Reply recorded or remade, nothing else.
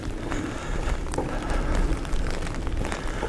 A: recorded